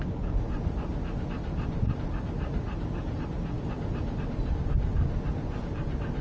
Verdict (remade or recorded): recorded